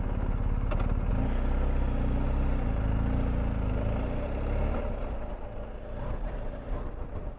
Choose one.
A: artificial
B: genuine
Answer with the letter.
B